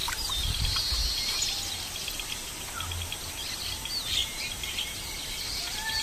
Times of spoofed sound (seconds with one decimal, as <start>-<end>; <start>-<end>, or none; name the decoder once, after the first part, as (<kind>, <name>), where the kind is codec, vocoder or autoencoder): 4.2-6.0 (vocoder, BigVGAN v2)